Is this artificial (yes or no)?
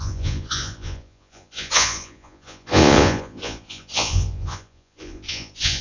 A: yes